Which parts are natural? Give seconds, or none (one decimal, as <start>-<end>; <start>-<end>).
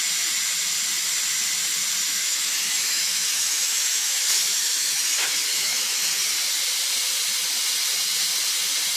0.0-2.1; 6.2-9.0